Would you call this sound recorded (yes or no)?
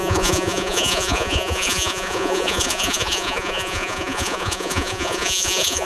no